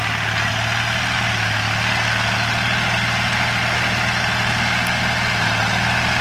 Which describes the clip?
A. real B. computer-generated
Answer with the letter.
A